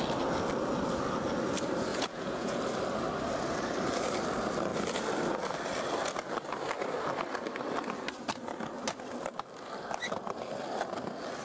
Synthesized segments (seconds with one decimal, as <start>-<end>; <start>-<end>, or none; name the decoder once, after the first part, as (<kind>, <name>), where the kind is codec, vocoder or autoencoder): 1.9-2.6 (vocoder, Vocos)